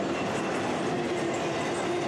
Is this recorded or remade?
recorded